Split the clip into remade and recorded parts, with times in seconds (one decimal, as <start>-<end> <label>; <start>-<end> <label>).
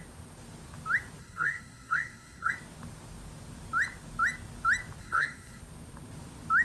0.0-1.2 recorded; 1.2-2.5 remade; 2.5-5.0 recorded; 5.0-5.6 remade; 5.6-6.6 recorded